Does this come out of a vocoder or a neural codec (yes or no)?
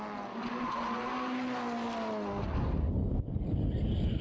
no